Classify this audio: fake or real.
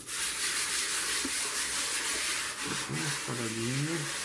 real